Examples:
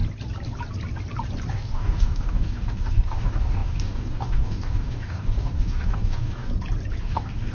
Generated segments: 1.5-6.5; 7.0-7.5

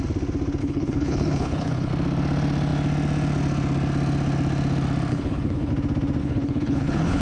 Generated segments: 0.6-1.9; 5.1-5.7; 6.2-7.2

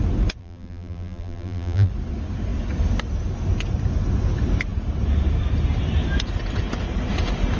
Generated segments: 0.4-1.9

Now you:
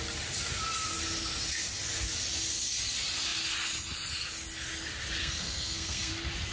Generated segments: 5.2-6.1

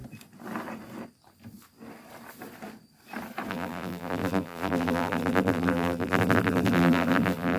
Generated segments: 3.5-7.6

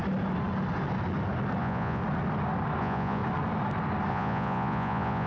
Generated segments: 1.6-2.0; 2.8-3.2; 4.1-5.3

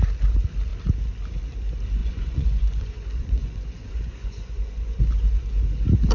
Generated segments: 2.0-5.0

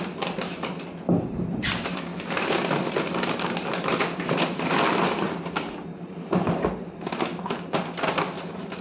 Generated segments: none